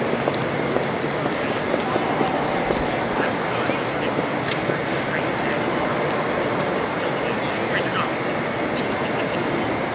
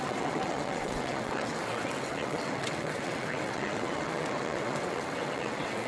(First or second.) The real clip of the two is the first